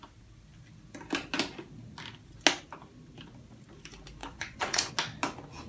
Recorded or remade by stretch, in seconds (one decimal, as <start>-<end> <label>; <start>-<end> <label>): 0.0-4.2 recorded; 4.2-4.9 remade; 4.9-5.7 recorded